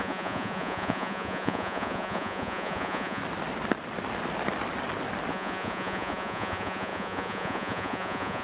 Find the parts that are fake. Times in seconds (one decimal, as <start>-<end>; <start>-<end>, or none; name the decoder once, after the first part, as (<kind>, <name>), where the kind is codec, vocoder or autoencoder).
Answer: 0.0-3.2 (vocoder, Vocos); 5.3-8.4